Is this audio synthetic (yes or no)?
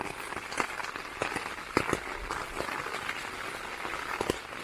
no